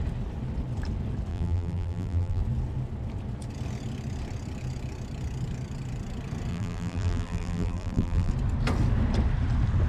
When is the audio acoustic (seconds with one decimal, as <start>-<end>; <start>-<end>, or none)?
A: 0.0-1.3; 2.4-6.5; 8.3-9.9